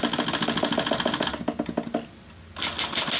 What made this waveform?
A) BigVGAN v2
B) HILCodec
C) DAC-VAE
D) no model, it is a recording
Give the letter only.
D